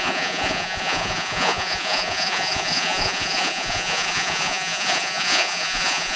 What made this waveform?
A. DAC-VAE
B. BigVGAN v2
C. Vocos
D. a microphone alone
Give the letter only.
C